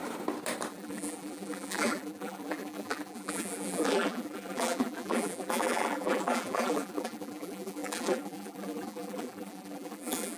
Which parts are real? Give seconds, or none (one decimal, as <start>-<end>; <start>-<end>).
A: 0.0-0.7